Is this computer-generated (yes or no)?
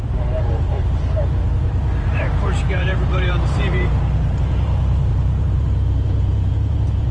yes